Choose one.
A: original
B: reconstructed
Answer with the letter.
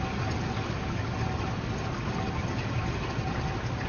A